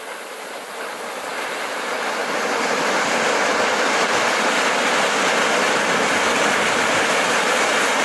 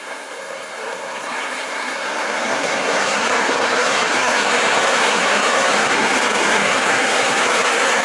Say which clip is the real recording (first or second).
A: first